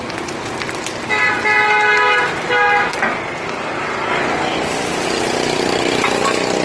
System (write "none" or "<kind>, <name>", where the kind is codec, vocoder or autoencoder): none